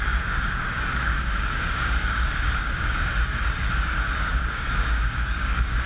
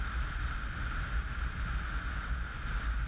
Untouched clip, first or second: second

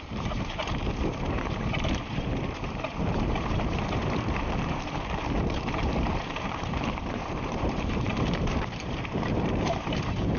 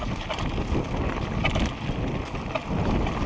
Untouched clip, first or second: second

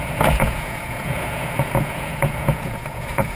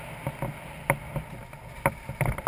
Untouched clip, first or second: second